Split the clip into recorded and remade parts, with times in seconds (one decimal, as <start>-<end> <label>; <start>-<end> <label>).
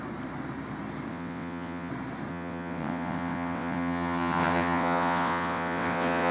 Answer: 0.0-1.1 recorded; 1.1-1.9 remade; 1.9-2.3 recorded; 2.3-6.3 remade